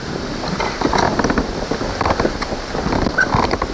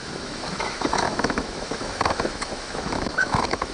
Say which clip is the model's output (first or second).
second